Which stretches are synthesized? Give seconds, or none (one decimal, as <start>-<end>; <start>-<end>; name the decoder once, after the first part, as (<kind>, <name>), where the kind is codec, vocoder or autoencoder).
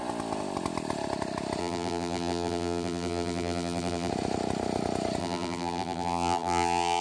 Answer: 1.6-4.1 (vocoder, BigVGAN v2); 5.2-7.0